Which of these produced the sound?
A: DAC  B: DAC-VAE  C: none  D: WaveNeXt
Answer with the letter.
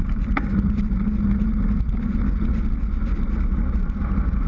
C